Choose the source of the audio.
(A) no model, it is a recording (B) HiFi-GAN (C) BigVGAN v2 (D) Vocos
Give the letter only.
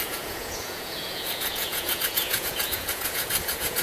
D